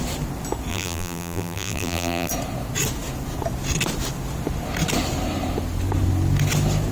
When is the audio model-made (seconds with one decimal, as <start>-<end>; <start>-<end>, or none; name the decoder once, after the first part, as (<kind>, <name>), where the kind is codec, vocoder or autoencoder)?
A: 0.7-2.3 (vocoder, BigVGAN v2)